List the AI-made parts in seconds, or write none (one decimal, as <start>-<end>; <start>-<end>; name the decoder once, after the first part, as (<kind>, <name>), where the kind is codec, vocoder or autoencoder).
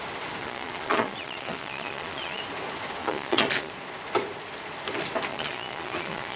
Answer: 0.4-2.4 (vocoder, Vocos); 3.0-3.7; 5.3-6.4